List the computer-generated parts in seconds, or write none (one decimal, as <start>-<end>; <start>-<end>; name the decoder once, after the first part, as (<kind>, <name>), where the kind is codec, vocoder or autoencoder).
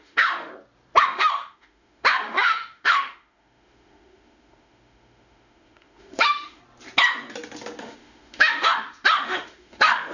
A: 0.0-0.5 (autoencoder, DAC-VAE); 1.0-6.6; 7.8-10.1